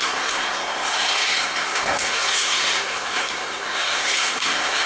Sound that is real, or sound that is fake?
fake